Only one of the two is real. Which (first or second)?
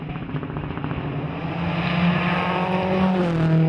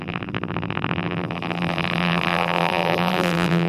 first